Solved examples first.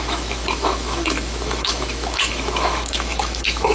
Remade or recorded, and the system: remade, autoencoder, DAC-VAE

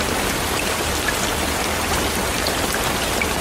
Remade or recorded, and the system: recorded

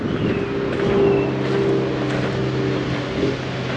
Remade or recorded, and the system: recorded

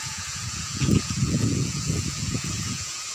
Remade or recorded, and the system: remade, vocoder, Vocos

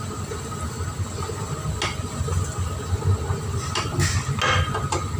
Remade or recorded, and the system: recorded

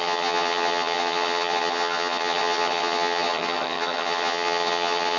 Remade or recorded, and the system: remade, vocoder, HiFi-GAN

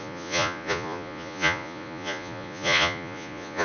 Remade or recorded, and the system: remade, vocoder, Vocos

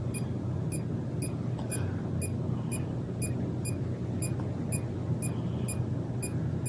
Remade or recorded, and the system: recorded